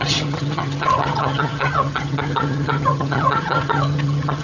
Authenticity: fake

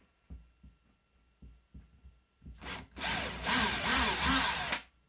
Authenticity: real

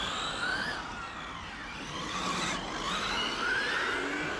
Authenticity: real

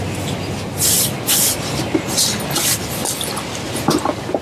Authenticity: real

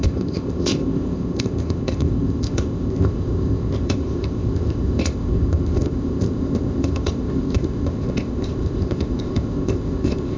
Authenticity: fake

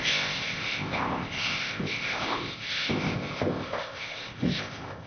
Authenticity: fake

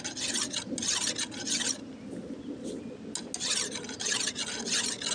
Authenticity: real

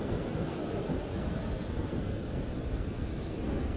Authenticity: fake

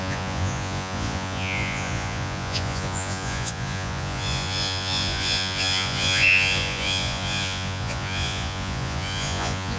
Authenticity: fake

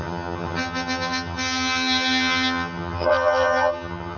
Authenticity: fake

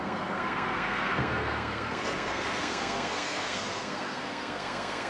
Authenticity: fake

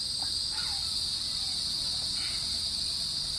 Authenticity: real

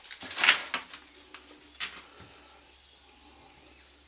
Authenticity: real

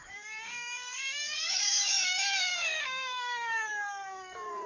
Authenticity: fake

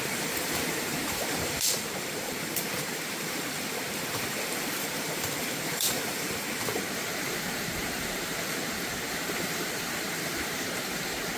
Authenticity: fake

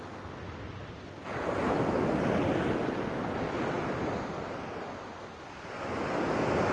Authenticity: real